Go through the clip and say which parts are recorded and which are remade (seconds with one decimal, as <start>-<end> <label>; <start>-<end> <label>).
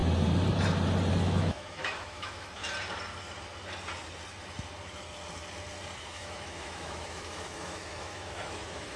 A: 0.0-1.2 recorded; 1.2-2.6 remade; 2.6-6.0 recorded; 6.0-9.0 remade